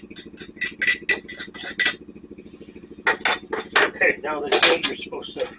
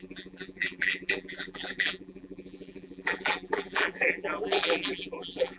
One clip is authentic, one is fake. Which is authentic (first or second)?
first